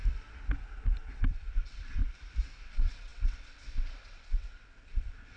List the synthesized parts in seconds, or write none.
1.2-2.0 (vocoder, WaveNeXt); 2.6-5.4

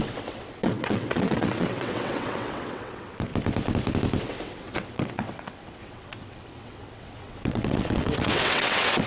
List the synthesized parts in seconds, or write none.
0.0-3.3 (vocoder, WaveNeXt); 4.2-9.1

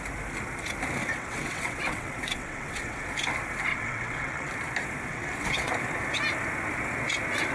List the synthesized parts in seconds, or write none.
1.0-3.1 (vocoder, WaveNeXt); 3.7-4.5; 5.1-5.7

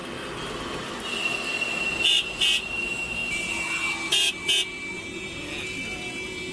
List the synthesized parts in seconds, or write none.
none

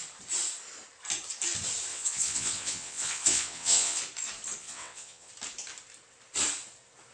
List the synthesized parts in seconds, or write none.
1.9-4.0 (vocoder, WaveNeXt); 4.6-5.3